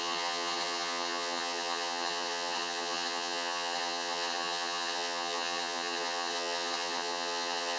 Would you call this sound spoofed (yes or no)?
yes